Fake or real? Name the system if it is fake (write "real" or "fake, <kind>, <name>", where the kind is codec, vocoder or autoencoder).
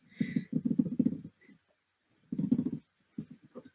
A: real